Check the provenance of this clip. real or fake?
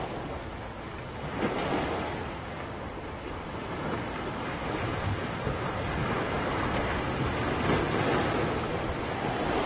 real